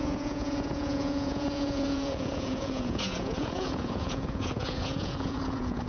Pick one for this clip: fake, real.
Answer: fake